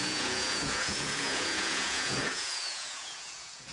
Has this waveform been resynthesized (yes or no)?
yes